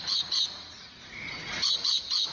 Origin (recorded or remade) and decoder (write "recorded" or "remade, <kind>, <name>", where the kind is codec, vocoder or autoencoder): remade, vocoder, Vocos